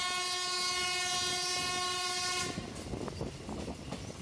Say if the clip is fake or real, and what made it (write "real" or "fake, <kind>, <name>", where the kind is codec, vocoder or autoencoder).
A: real